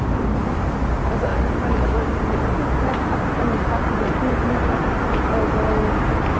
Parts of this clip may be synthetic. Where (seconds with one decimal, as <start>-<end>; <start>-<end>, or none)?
none